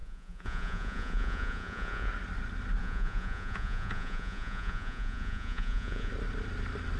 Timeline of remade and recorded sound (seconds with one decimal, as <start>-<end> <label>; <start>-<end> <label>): 0.0-2.1 remade; 2.1-2.8 recorded; 2.8-6.1 remade; 6.1-7.0 recorded